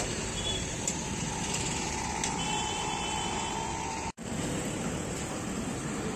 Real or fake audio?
fake